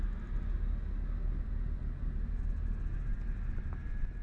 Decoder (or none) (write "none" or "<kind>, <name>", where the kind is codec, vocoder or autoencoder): none